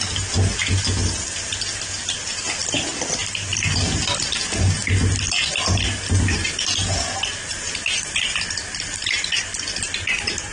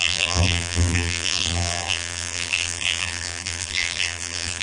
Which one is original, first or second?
first